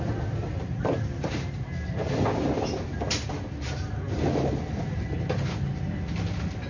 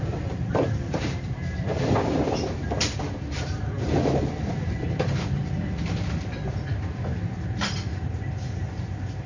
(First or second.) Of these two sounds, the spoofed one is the second